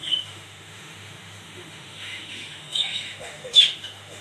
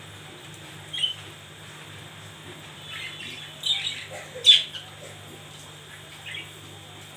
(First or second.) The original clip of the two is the second